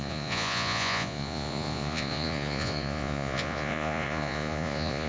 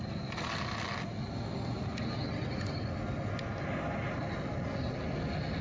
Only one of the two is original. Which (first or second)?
second